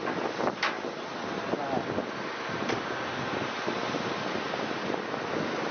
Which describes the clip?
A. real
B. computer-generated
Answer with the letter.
A